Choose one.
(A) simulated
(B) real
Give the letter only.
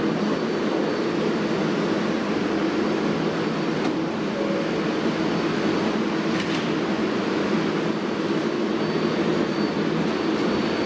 B